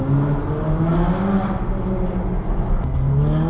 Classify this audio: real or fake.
real